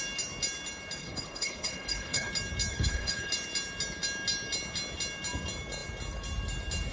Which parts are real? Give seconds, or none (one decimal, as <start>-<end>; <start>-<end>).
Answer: 0.0-1.0; 2.3-2.7; 3.3-6.9